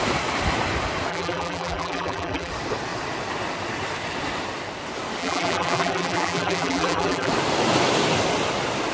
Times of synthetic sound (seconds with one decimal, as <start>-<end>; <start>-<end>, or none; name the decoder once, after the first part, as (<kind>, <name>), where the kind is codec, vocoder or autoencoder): 1.1-2.5 (vocoder, BigVGAN v2); 5.2-7.3